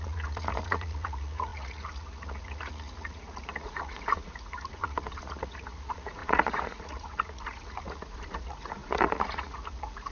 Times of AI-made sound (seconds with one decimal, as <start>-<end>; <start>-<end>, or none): 0.0-10.1